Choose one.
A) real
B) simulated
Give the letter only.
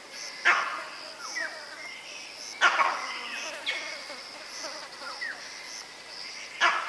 A